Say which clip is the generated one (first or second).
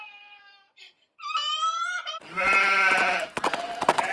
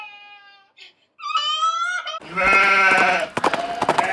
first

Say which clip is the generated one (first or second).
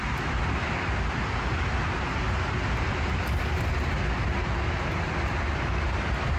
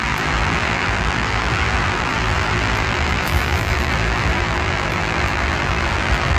second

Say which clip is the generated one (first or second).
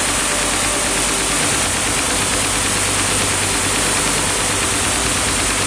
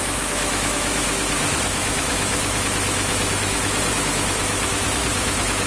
second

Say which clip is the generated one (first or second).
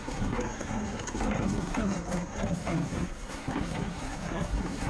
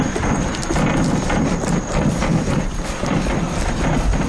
first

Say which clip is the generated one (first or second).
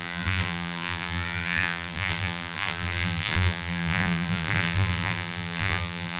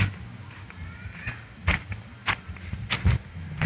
first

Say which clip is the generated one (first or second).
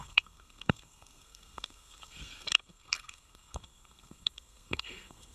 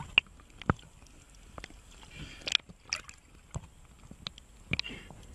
first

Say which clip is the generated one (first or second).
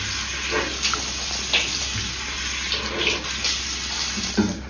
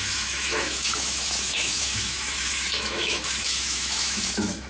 second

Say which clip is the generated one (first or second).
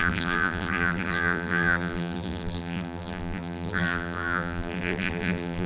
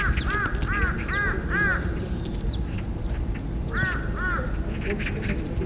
first